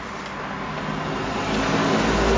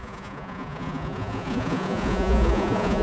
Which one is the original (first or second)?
first